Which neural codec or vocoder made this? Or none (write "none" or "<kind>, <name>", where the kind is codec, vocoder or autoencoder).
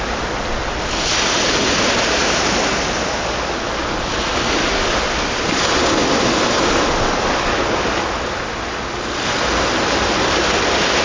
none